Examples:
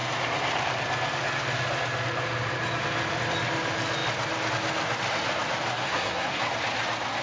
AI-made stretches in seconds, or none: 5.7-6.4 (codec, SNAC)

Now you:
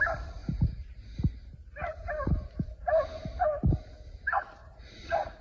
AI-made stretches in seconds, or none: 4.6-5.4 (vocoder, Vocos)